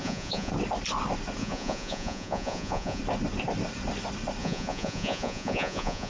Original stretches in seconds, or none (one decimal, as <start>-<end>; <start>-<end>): 0.5-1.4; 3.0-4.4